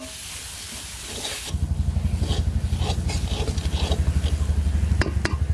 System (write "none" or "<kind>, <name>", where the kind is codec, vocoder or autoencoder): none